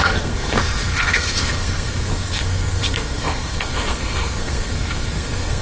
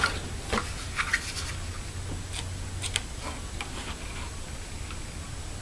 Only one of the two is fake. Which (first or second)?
first